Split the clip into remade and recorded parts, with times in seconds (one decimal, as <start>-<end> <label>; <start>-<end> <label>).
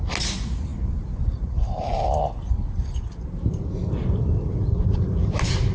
0.0-5.7 recorded